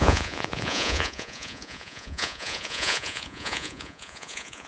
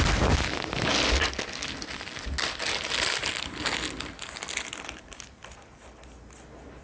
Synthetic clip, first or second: first